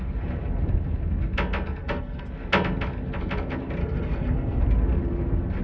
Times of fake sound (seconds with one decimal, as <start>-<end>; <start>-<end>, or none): 1.8-2.3; 3.8-4.6